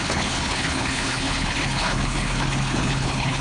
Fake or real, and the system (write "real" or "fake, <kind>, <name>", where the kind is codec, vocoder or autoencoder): fake, codec, HILCodec